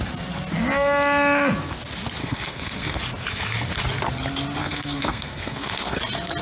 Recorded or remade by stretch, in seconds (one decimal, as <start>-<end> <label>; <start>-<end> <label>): 0.0-2.2 recorded; 2.2-3.0 remade; 3.0-4.6 recorded; 4.6-6.0 remade; 6.0-6.4 recorded